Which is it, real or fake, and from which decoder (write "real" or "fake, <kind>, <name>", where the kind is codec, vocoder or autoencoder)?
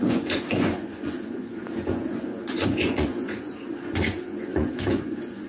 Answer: fake, vocoder, Vocos